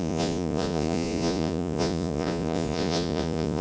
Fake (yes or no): yes